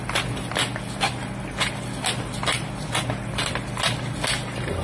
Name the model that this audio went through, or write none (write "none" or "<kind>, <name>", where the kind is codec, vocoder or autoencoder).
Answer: none